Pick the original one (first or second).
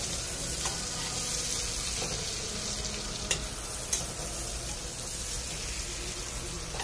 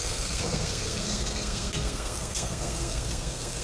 first